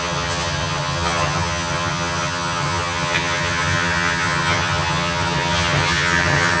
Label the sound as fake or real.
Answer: fake